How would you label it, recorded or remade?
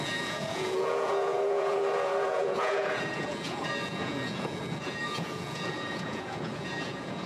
remade